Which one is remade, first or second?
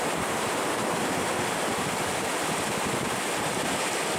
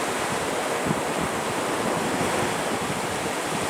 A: first